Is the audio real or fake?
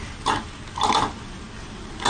real